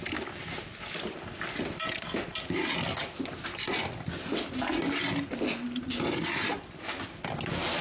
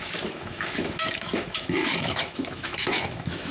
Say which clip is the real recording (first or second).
first